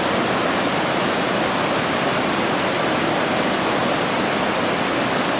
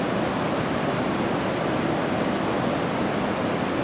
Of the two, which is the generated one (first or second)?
first